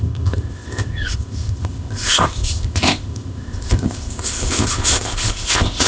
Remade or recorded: remade